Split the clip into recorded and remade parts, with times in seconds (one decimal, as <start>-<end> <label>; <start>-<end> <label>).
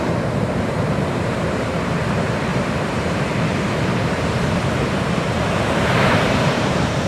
0.0-7.1 remade